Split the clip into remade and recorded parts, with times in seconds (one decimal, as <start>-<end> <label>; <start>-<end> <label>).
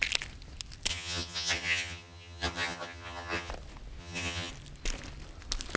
0.0-0.9 recorded; 0.9-3.5 remade; 3.5-4.0 recorded; 4.0-4.5 remade; 4.5-5.8 recorded